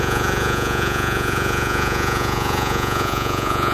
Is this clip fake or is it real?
fake